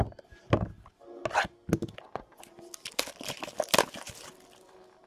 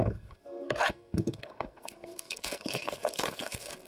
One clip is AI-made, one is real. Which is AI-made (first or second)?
second